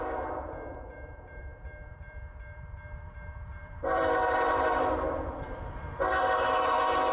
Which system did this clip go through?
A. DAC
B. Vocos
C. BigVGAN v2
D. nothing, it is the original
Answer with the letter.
C